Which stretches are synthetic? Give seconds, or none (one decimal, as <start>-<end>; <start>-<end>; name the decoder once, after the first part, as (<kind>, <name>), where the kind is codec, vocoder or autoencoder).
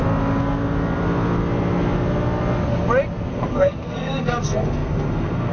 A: 3.3-5.5 (codec, SNAC)